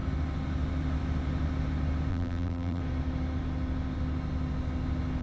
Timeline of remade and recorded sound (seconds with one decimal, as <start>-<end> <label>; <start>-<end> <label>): 0.0-2.1 recorded; 2.1-2.8 remade; 2.8-5.2 recorded